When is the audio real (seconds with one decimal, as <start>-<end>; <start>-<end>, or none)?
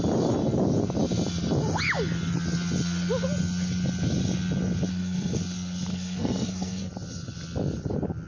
0.0-4.9; 5.4-5.9; 6.8-8.3